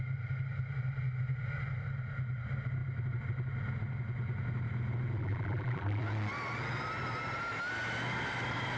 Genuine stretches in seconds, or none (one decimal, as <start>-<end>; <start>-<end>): 0.0-5.2; 6.0-8.8